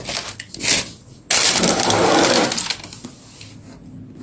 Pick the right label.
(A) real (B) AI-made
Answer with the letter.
A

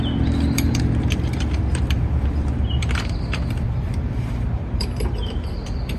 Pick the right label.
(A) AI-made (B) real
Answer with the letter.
A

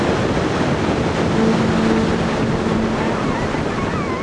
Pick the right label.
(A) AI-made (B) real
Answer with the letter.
B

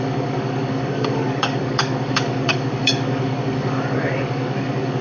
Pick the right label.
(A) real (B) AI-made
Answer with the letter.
B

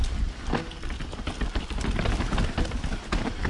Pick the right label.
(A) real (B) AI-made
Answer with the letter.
A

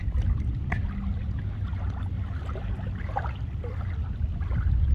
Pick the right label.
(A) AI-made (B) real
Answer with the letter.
B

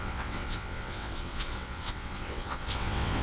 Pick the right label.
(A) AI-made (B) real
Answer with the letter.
A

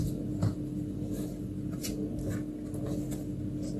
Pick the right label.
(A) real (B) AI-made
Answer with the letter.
A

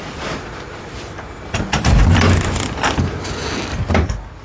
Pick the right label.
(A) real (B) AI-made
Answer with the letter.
A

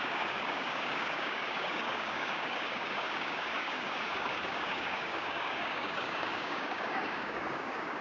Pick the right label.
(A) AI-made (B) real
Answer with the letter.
A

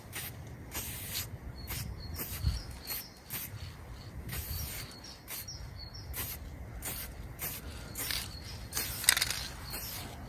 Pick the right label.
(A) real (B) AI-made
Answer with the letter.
A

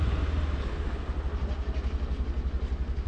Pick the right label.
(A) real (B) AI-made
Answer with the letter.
A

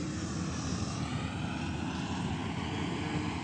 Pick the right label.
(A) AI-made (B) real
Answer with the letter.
B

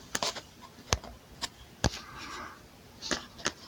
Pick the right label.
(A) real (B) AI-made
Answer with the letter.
A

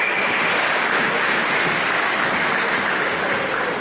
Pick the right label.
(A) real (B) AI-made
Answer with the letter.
A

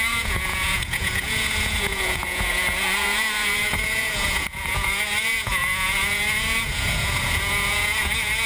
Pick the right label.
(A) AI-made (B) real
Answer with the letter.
A